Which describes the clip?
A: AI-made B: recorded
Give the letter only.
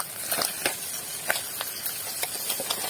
B